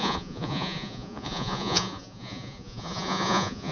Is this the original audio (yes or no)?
no